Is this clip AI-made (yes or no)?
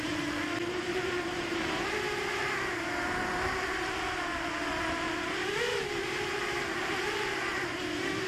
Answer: yes